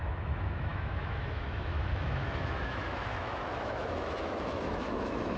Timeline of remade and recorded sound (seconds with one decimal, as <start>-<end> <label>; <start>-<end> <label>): 0.0-5.4 remade